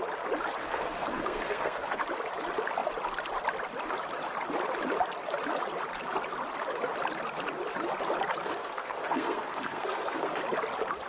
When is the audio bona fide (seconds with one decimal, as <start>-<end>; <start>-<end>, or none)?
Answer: 0.0-0.6; 2.0-8.4; 10.4-11.1